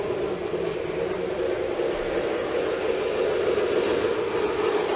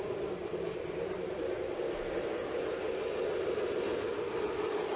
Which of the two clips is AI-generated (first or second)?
second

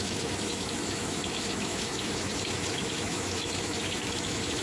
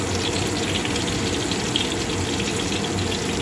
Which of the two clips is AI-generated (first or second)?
first